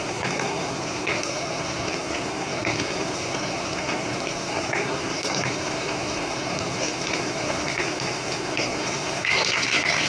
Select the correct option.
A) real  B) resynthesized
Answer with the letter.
B